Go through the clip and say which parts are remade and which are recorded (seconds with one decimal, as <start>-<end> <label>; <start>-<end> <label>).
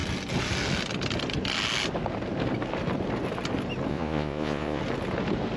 0.0-3.9 recorded; 3.9-4.8 remade; 4.8-5.6 recorded